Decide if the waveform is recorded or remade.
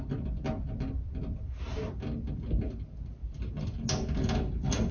recorded